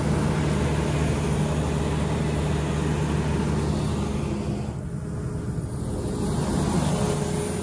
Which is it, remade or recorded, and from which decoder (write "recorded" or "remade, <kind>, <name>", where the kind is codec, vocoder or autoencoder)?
recorded